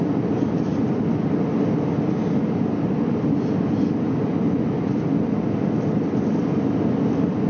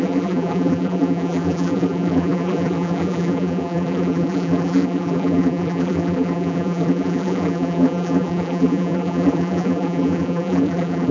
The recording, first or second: first